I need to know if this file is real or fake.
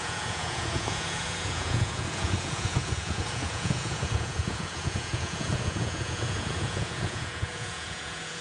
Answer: fake